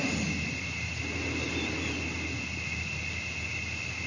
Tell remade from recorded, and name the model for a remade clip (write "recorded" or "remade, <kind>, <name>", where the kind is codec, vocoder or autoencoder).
recorded